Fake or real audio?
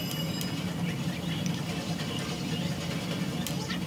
real